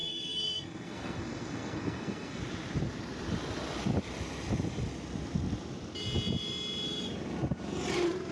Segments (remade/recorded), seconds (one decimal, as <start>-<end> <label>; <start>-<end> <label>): 0.0-2.4 remade; 2.4-8.3 recorded